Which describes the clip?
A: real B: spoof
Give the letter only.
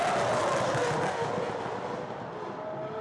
A